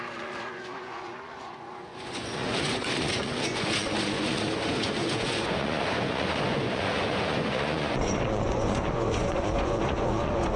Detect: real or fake fake